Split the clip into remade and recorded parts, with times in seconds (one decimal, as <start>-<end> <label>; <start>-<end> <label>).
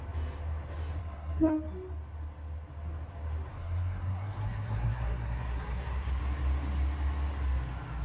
0.0-1.0 recorded; 1.0-1.5 remade; 1.5-3.6 recorded; 3.6-6.2 remade; 6.2-8.0 recorded